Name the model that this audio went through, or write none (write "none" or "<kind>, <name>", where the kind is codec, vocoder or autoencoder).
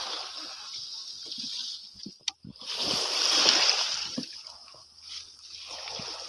none